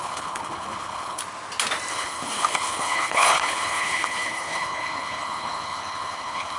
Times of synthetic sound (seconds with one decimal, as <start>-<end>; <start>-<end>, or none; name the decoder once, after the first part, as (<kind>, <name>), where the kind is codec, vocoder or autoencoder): 0.0-1.2 (codec, HILCodec); 1.9-6.6

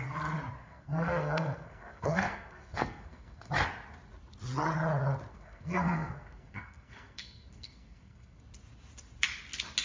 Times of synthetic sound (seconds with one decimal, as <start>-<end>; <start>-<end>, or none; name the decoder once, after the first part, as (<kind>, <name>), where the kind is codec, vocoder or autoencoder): 0.6-3.5 (codec, SNAC); 5.3-8.4

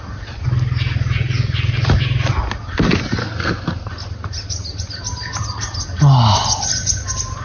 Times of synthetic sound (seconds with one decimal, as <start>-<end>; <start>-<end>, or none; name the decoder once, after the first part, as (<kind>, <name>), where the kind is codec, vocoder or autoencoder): 3.2-3.9 (codec, SNAC)

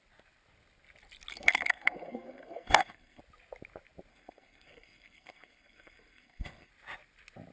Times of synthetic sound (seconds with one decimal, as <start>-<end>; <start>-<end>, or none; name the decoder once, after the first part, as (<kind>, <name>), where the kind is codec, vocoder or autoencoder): 1.3-3.2 (codec, SNAC); 4.1-6.7